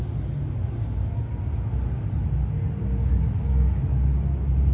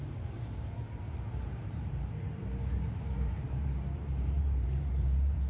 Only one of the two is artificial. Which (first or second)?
second